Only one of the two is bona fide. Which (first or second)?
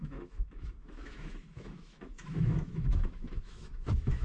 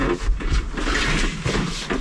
second